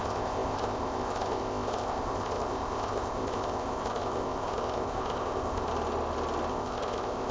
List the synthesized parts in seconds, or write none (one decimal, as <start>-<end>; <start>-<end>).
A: 0.0-5.7; 6.5-7.3